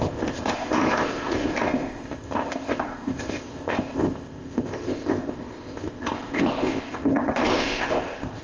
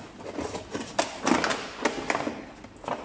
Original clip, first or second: second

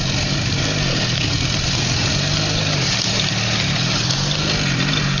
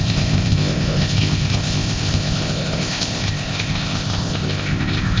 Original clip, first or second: first